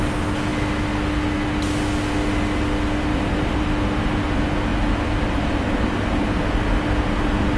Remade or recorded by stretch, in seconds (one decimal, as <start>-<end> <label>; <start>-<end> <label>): 0.0-3.1 recorded; 3.1-3.7 remade; 3.7-7.6 recorded